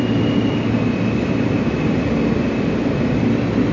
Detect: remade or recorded recorded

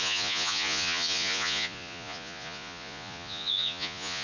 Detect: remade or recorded remade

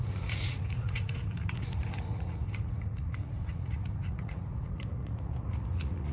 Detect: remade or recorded remade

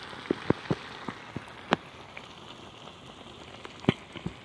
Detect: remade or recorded recorded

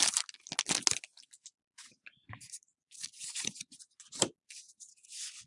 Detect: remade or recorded recorded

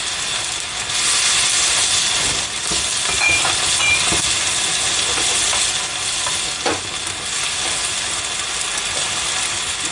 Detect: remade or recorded recorded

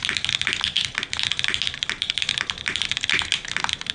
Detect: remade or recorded recorded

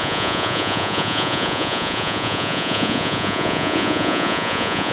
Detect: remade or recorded remade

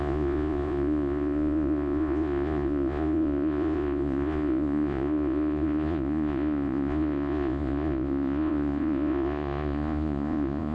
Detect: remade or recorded remade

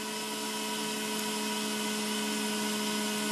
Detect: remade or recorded recorded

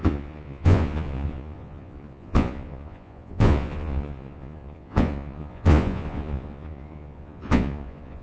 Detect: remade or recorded remade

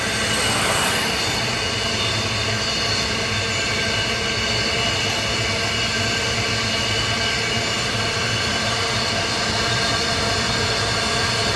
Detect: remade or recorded recorded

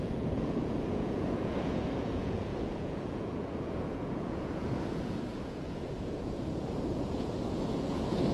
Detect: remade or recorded remade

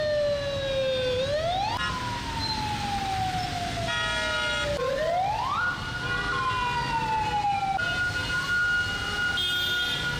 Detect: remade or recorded recorded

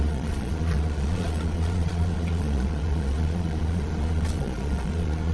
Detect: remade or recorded remade